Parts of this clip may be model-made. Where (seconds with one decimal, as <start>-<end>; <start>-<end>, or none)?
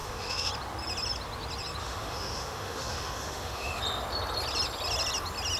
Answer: 0.0-0.5; 1.8-3.8